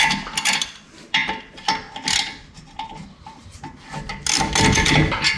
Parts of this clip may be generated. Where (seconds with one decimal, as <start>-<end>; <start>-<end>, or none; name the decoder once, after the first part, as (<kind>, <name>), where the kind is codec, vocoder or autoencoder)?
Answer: none